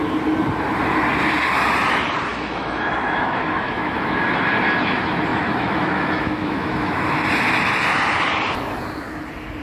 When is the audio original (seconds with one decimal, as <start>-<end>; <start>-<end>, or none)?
0.0-2.3; 4.2-5.3; 7.1-9.6